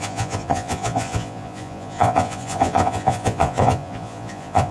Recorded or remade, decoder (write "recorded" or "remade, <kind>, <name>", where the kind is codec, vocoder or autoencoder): remade, vocoder, Vocos